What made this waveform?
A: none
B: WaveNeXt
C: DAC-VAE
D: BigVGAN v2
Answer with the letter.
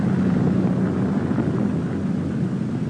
A